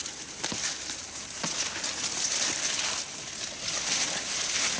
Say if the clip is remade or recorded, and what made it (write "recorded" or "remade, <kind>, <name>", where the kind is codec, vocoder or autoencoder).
recorded